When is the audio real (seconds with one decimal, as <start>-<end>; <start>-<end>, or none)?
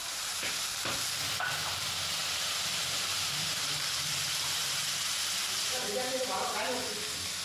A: 0.6-2.2; 6.6-7.4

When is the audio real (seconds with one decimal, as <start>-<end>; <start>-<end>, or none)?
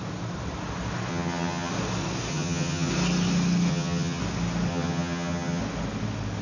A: 0.0-1.1; 1.7-2.3; 2.9-3.7; 4.2-4.7; 5.6-6.4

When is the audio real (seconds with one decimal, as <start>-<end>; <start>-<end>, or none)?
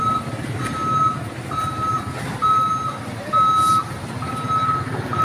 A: 0.0-5.2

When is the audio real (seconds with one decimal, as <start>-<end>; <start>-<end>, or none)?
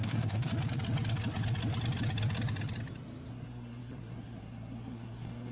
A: 0.5-3.3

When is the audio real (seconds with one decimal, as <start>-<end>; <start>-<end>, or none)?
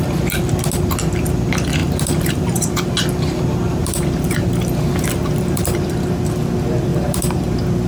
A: 0.0-1.8; 2.9-3.8; 5.6-6.9; 7.4-7.9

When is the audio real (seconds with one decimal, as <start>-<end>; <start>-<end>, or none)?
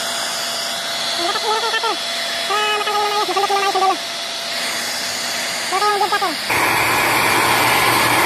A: 0.0-8.3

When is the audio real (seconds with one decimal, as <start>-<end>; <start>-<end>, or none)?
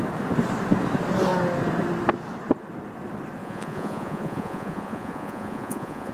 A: 0.0-3.4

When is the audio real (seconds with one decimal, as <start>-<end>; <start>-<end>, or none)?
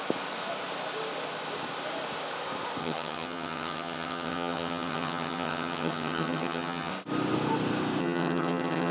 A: 0.0-2.8; 6.9-8.0